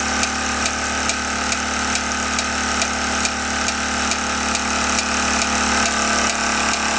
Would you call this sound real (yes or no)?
yes